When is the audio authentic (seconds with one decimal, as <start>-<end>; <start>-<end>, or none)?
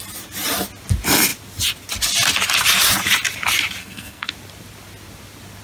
0.0-3.8; 4.3-5.6